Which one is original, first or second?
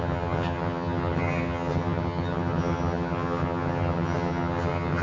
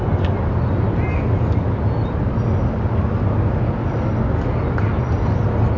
second